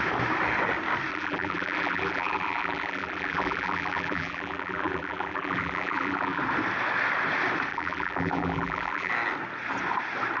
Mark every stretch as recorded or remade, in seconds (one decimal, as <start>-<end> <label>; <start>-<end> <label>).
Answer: 0.0-1.1 recorded; 1.1-6.4 remade; 6.4-7.7 recorded; 7.7-9.1 remade; 9.1-10.4 recorded